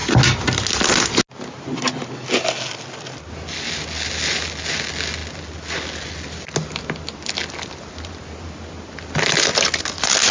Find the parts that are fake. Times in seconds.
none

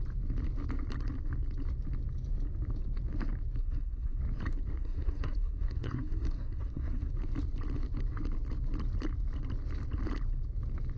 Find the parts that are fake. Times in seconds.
3.6-4.2; 4.8-7.1

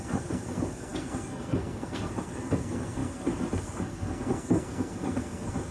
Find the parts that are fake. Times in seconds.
0.0-5.7

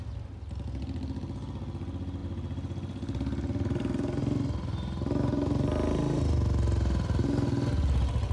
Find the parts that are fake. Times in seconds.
none

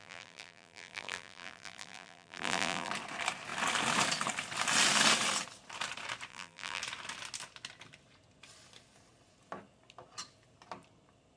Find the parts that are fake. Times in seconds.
0.0-2.9; 6.3-6.8

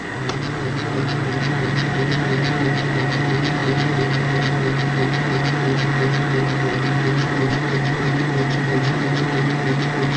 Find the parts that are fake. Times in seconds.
7.2-9.0

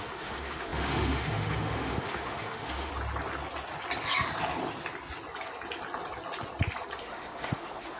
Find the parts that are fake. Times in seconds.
0.0-2.9; 7.0-8.0

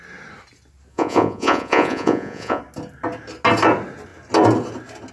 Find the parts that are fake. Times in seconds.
0.9-2.6